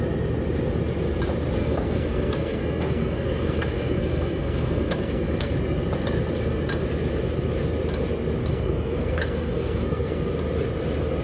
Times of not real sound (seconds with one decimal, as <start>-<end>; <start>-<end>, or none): 1.6-5.5; 8.4-10.3